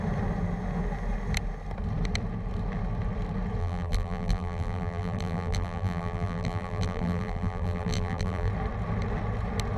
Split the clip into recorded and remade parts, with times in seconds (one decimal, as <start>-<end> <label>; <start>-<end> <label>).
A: 0.0-3.6 recorded; 3.6-8.5 remade; 8.5-9.8 recorded